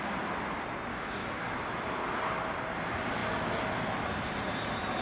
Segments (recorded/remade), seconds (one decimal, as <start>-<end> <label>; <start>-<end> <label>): 0.0-0.9 recorded; 0.9-1.5 remade; 1.5-5.0 recorded